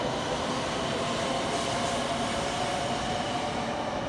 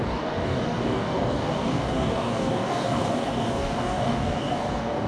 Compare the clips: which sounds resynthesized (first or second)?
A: second